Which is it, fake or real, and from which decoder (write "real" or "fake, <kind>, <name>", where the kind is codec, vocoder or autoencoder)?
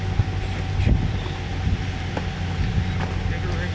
real